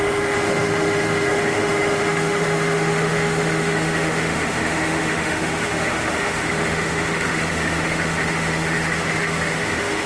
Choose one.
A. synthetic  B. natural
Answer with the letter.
A